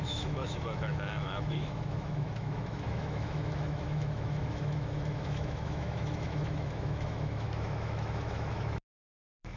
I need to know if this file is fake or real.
fake